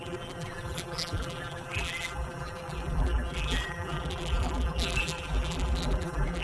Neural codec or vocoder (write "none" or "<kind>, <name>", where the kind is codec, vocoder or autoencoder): vocoder, BigVGAN v2